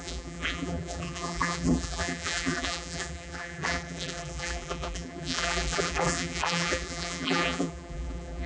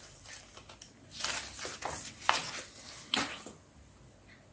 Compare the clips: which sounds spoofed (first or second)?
first